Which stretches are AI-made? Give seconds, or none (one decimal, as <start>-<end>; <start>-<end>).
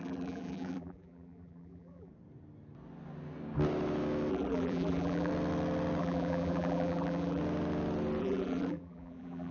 0.0-2.1; 4.3-5.3; 6.0-7.4; 8.2-9.5